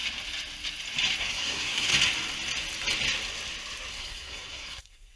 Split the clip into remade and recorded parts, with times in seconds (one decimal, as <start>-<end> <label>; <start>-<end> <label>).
0.0-1.2 recorded; 1.2-1.9 remade; 1.9-3.9 recorded; 3.9-5.2 remade